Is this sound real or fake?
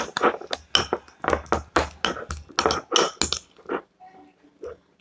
real